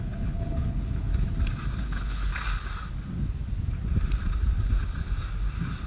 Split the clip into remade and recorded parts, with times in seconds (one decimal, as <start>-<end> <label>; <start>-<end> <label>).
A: 0.0-1.1 remade; 1.1-1.8 recorded; 1.8-2.3 remade; 2.3-5.9 recorded

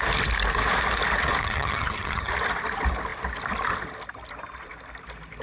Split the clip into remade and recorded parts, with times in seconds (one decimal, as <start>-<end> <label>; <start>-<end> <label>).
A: 0.0-1.4 recorded; 1.4-2.3 remade; 2.3-5.4 recorded

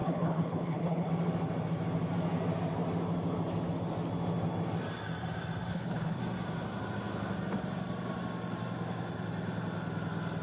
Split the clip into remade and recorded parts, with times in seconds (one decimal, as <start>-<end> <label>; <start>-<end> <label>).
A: 0.0-1.1 remade; 1.1-5.7 recorded; 5.7-6.2 remade; 6.2-10.4 recorded

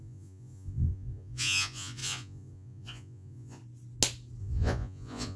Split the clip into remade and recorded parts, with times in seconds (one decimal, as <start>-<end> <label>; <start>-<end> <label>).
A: 0.0-3.6 remade; 3.6-4.4 recorded; 4.4-5.4 remade